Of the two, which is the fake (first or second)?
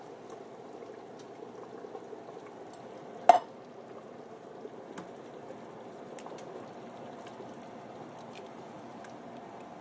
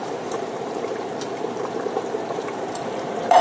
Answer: second